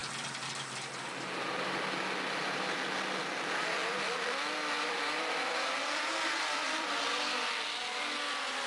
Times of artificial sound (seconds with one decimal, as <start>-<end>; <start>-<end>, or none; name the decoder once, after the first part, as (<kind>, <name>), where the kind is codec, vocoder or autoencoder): 0.0-0.6 (vocoder, BigVGAN v2); 3.8-6.9